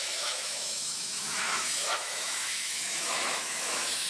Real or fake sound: fake